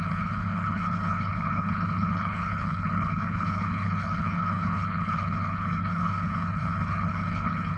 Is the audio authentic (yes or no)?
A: no